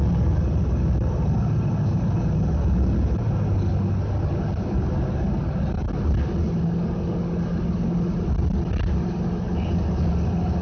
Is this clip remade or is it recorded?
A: recorded